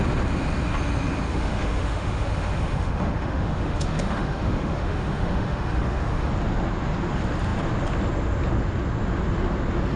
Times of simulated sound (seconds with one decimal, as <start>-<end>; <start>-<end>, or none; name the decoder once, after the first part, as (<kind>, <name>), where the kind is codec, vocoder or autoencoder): 1.3-6.3 (autoencoder, DAC-VAE)